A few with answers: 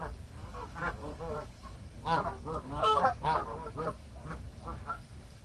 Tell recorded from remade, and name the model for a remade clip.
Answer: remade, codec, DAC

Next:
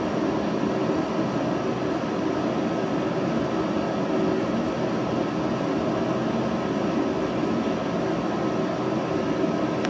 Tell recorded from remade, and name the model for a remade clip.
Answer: recorded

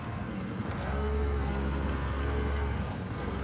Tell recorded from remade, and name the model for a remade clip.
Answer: remade, codec, SNAC